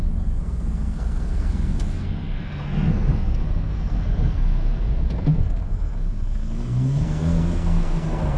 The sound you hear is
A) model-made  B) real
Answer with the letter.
A